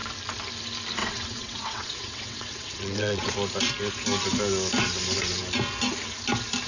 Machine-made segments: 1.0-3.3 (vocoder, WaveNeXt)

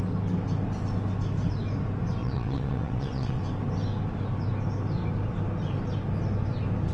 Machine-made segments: 2.2-3.4 (vocoder, WaveNeXt)

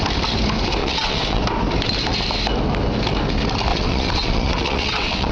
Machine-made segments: 0.8-1.4 (vocoder, WaveNeXt); 3.7-5.3